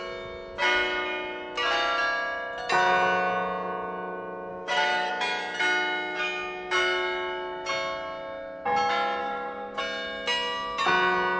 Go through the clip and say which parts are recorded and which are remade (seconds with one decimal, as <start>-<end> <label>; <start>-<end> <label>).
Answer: 0.0-4.5 recorded; 4.5-5.1 remade; 5.1-9.2 recorded; 9.2-9.8 remade; 9.8-11.4 recorded

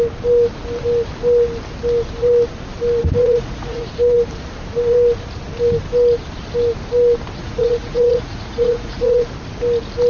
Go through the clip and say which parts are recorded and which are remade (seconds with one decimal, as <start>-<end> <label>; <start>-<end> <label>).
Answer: 0.0-3.2 recorded; 3.2-3.8 remade; 3.8-7.4 recorded; 7.4-9.3 remade; 9.3-10.1 recorded

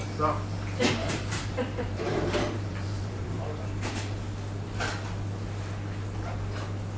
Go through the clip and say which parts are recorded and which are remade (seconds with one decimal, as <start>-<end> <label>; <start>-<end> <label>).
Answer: 0.0-1.0 recorded; 1.0-3.6 remade; 3.6-7.0 recorded

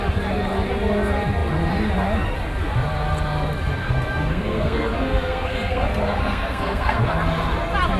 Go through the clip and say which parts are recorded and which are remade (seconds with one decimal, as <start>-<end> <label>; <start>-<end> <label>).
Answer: 0.0-3.8 recorded; 3.8-7.1 remade; 7.1-8.0 recorded

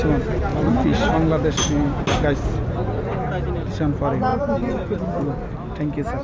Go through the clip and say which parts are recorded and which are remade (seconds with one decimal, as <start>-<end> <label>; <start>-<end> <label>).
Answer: 0.0-0.5 recorded; 0.5-1.1 remade; 1.1-2.6 recorded; 2.6-3.3 remade; 3.3-4.3 recorded; 4.3-5.0 remade; 5.0-6.2 recorded

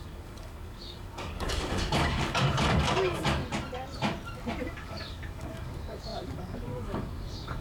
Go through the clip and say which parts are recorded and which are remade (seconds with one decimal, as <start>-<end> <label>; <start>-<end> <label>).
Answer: 0.0-3.4 remade; 3.4-4.6 recorded; 4.6-7.6 remade

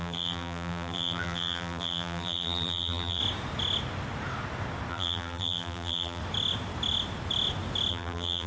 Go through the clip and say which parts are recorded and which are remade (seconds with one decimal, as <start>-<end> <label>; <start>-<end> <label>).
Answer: 0.0-3.2 remade; 3.2-4.9 recorded; 4.9-6.2 remade; 6.2-7.9 recorded; 7.9-8.5 remade